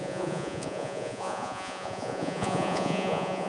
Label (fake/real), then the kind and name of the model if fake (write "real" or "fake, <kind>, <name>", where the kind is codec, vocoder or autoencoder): fake, vocoder, Vocos